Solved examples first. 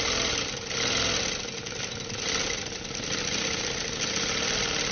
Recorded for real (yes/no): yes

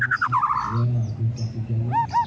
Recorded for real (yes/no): yes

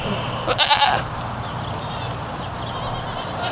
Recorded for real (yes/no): yes